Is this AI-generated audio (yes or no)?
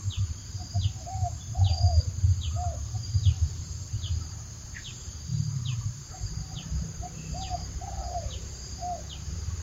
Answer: yes